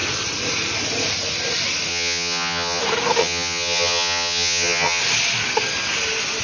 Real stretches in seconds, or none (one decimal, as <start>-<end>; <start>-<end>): 0.0-1.9; 2.8-3.2; 5.0-6.4